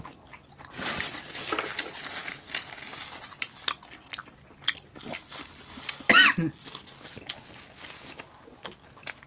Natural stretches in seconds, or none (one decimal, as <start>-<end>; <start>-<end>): 0.0-9.3